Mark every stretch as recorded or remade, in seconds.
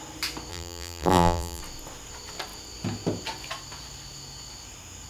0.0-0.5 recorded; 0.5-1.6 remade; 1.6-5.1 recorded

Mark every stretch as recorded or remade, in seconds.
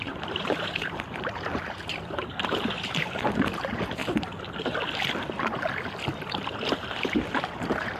0.0-4.0 remade; 4.0-7.4 recorded; 7.4-8.0 remade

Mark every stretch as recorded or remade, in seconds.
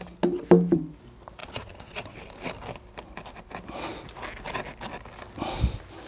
0.0-1.4 recorded; 1.4-2.2 remade; 2.2-6.1 recorded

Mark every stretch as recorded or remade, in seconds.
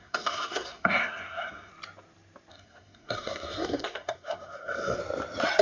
0.0-1.7 remade; 1.7-2.5 recorded; 2.5-5.0 remade; 5.0-5.6 recorded